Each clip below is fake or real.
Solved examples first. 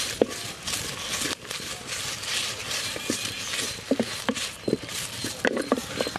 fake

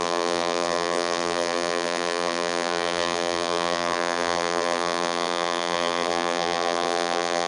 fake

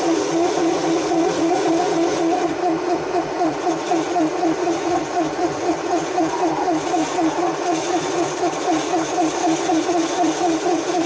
fake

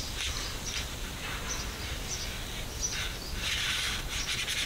fake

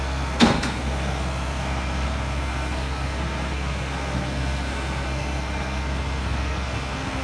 fake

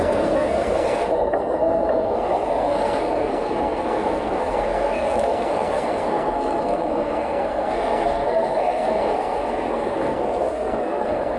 fake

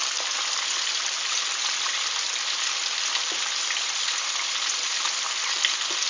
real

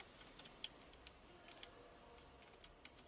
real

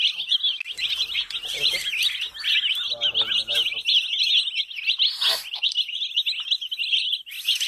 real